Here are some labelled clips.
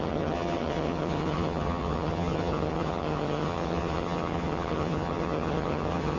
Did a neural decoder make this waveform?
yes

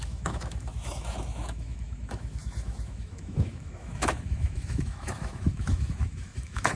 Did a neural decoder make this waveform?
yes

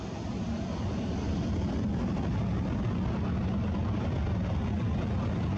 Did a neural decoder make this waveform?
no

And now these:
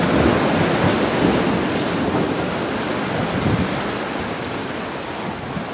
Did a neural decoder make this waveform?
no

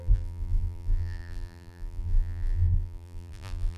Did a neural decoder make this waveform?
yes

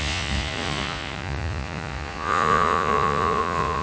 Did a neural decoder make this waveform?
yes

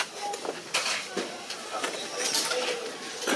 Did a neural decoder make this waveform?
no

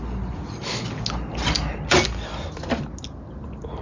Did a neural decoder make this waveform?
no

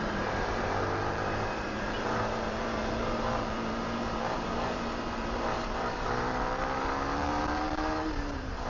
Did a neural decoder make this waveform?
yes